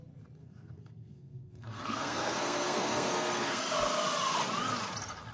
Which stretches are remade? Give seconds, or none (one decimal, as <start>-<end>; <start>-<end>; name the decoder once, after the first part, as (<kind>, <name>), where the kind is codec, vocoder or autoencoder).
0.4-3.6 (codec, SNAC)